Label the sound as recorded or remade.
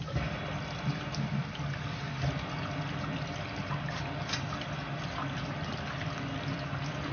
recorded